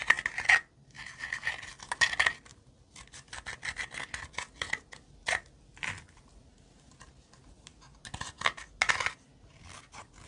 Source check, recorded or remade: recorded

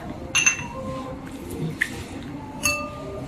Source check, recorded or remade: recorded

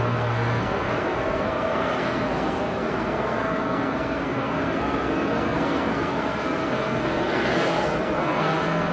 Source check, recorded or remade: remade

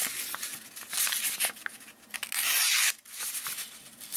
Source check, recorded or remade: recorded